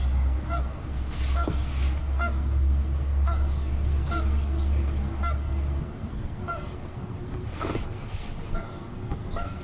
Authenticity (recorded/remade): remade